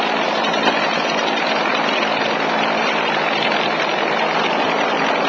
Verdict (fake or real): fake